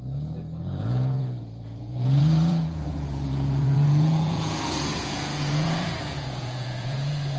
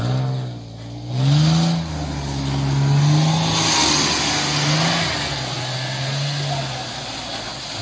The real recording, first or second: second